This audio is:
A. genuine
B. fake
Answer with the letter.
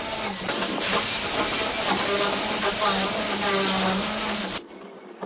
A